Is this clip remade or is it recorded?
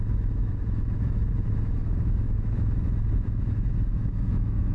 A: remade